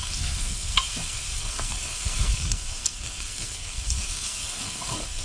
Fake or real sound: fake